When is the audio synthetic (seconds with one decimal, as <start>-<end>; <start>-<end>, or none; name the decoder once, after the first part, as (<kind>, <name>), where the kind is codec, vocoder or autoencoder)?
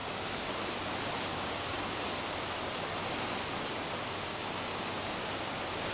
0.0-0.6 (codec, DAC); 1.3-2.0; 4.3-5.1